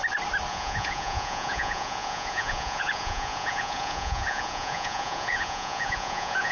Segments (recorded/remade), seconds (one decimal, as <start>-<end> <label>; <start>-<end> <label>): 0.0-0.5 recorded; 0.5-6.5 remade